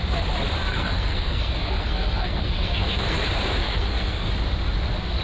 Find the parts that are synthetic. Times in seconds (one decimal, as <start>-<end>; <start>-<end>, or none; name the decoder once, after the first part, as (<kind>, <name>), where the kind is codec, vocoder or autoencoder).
0.7-3.2 (codec, SNAC); 3.6-4.3